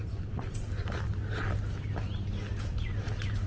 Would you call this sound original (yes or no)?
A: yes